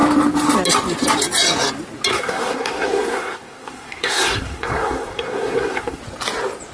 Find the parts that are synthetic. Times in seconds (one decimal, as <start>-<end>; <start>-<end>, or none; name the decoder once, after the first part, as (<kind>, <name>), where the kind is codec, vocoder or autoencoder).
2.1-6.0 (codec, SNAC)